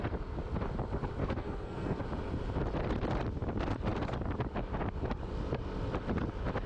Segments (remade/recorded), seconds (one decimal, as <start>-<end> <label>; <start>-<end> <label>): 0.0-1.2 recorded; 1.2-2.0 remade; 2.0-6.7 recorded